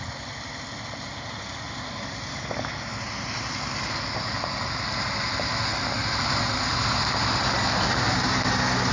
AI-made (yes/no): no